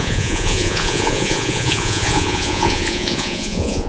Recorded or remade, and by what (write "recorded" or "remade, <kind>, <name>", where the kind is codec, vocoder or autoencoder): remade, vocoder, Vocos